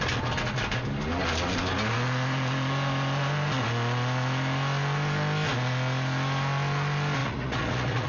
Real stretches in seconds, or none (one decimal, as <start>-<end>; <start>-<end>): 0.0-7.2